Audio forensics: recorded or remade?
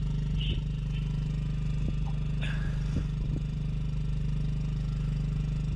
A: recorded